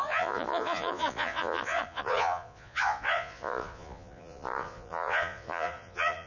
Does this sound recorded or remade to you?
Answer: remade